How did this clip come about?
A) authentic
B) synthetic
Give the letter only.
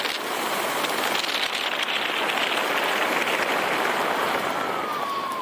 A